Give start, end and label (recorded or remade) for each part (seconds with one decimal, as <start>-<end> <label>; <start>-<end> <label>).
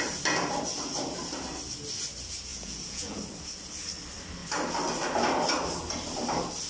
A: 0.0-2.5 recorded; 2.5-3.2 remade; 3.2-6.7 recorded